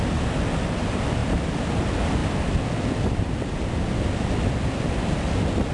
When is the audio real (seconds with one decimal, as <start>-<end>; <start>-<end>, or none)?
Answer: 0.0-5.7